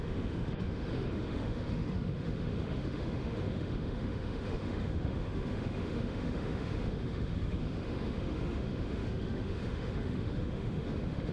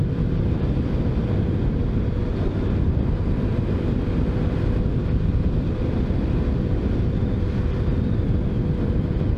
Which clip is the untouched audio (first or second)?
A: second